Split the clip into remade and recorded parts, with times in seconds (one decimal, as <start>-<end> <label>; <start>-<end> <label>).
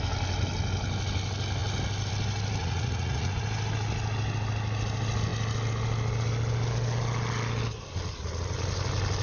0.0-2.6 recorded; 2.6-3.4 remade; 3.4-9.2 recorded